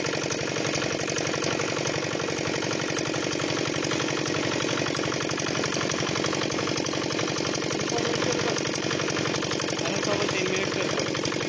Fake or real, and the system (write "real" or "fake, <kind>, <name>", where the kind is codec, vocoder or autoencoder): real